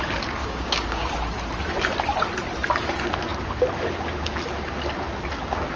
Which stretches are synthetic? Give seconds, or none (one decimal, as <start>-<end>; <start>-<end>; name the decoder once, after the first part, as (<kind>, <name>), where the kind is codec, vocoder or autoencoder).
0.4-1.1 (codec, DAC)